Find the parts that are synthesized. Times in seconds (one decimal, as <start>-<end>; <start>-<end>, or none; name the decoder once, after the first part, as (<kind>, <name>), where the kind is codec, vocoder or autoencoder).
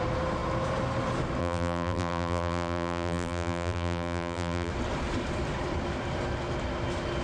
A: 1.4-4.7 (vocoder, BigVGAN v2)